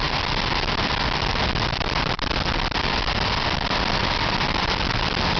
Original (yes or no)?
yes